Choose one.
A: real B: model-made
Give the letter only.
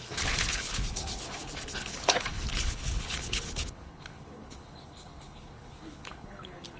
B